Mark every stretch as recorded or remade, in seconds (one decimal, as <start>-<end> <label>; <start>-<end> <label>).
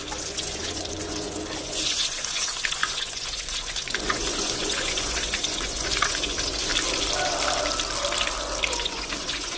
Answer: 0.0-6.7 remade; 6.7-8.7 recorded; 8.7-9.6 remade